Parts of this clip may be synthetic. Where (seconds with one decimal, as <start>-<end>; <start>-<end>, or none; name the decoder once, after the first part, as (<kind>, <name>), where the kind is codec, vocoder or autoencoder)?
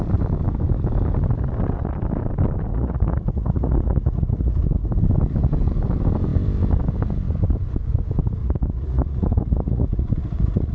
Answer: 2.7-4.5 (vocoder, Vocos); 8.4-10.7